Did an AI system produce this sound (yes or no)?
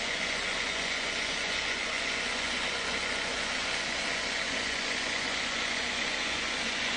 yes